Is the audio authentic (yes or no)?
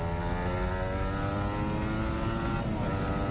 yes